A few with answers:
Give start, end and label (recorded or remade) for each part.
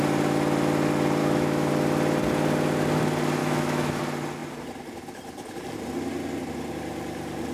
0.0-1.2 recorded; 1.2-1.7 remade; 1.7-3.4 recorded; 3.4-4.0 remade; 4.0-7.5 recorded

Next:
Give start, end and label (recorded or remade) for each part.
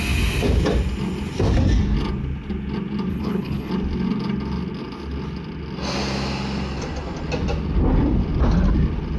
0.0-3.1 recorded; 3.1-3.7 remade; 3.7-9.2 recorded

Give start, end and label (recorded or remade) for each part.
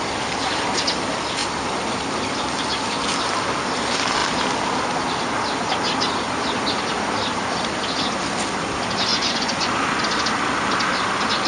0.0-9.1 recorded; 9.1-9.7 remade; 9.7-11.5 recorded